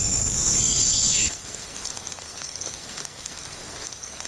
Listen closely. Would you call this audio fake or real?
fake